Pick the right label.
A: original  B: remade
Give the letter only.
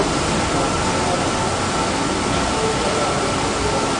A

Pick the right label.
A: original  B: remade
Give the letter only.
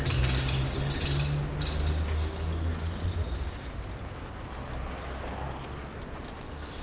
A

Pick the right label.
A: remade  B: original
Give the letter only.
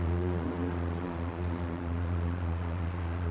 A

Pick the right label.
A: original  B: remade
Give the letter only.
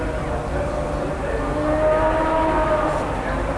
A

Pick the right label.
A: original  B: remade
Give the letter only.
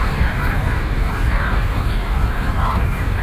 B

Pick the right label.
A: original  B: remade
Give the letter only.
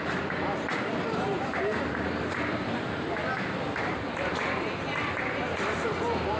B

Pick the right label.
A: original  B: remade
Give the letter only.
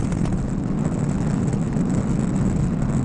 A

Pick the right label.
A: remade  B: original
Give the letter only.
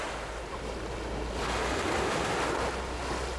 B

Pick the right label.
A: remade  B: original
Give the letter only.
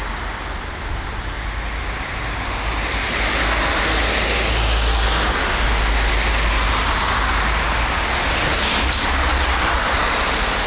B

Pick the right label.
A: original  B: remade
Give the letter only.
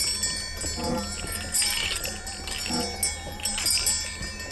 A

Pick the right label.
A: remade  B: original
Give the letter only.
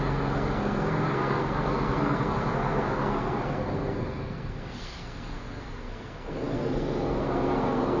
A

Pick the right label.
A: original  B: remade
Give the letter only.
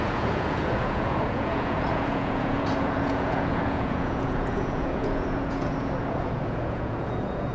B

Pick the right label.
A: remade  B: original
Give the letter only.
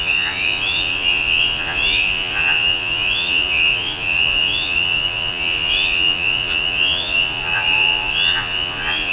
A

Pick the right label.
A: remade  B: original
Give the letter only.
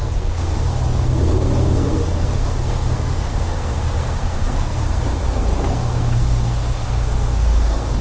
A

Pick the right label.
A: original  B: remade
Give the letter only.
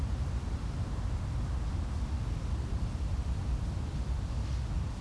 A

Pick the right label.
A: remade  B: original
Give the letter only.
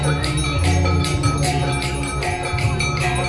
B